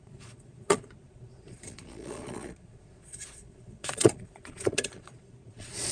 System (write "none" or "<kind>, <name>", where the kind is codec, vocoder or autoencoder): vocoder, Vocos